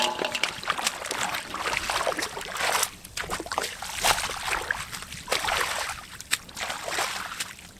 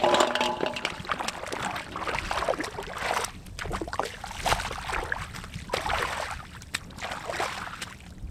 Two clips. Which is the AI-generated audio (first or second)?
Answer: first